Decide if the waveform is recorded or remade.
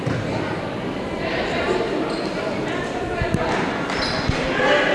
recorded